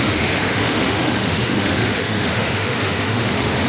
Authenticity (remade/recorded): remade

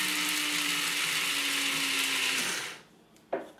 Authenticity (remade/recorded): recorded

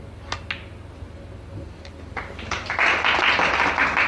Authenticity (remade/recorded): recorded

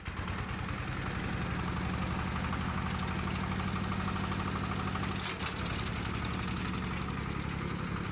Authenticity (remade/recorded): recorded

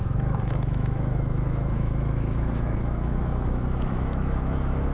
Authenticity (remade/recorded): remade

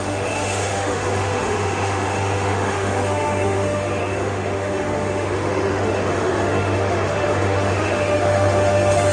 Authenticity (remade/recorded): remade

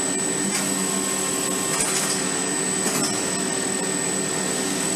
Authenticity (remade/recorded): recorded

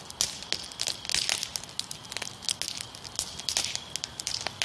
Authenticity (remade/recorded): recorded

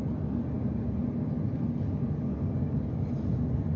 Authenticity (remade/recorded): recorded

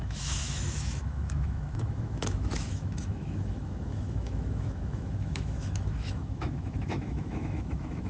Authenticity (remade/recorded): remade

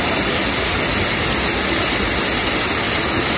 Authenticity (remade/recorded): recorded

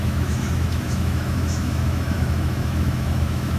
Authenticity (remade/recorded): remade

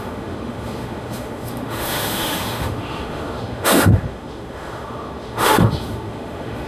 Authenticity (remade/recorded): remade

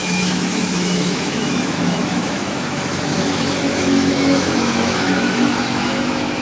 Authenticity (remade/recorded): remade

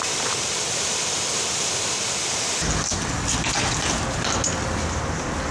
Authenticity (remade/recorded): recorded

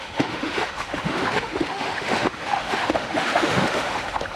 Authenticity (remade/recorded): remade